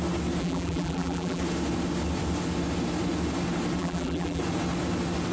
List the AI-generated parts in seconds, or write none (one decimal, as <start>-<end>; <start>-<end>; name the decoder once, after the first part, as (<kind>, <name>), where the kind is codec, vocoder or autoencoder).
0.4-1.4 (vocoder, BigVGAN v2); 3.8-4.4